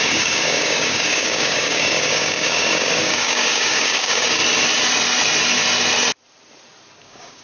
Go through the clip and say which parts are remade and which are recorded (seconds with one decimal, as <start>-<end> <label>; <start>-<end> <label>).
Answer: 0.0-4.4 remade; 4.4-7.0 recorded; 7.0-7.4 remade